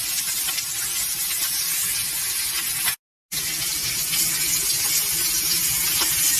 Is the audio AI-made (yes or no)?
no